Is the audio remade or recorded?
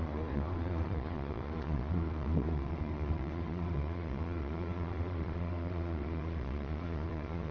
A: remade